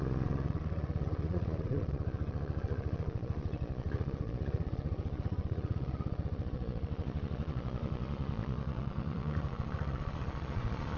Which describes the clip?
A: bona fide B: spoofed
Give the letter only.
B